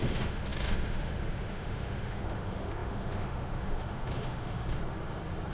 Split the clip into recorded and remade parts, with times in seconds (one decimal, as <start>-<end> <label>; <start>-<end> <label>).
0.0-4.8 remade; 4.8-5.5 recorded